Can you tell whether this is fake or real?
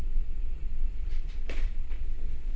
fake